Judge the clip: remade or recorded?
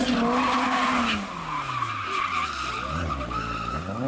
recorded